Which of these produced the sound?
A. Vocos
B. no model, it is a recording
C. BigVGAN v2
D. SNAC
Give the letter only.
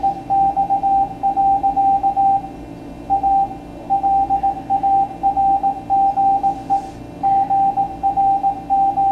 B